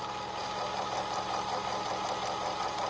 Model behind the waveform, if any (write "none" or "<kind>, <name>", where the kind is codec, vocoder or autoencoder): none